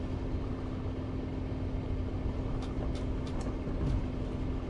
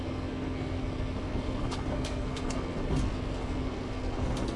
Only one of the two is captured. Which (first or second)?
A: first